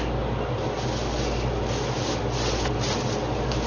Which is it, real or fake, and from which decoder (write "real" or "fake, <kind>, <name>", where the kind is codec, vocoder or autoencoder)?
real